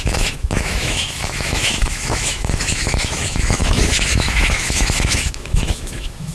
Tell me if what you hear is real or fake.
fake